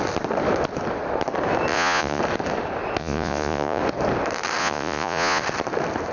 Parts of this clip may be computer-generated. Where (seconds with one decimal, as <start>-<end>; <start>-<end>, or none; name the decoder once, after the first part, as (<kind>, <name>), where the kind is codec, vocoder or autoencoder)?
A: 1.7-2.2 (vocoder, Vocos); 3.0-3.8; 4.6-5.4